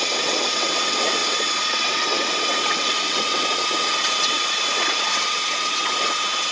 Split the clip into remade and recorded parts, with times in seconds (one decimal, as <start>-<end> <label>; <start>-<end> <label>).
0.0-6.5 remade